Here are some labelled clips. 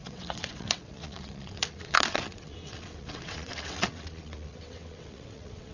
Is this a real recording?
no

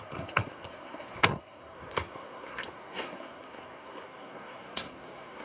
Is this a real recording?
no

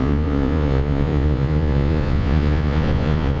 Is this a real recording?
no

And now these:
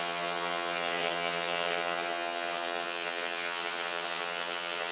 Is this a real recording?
no